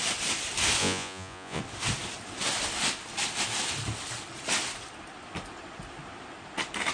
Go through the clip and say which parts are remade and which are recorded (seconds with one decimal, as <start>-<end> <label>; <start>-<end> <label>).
0.0-0.8 recorded; 0.8-1.6 remade; 1.6-6.9 recorded